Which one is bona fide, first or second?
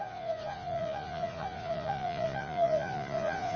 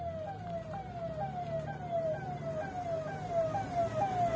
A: second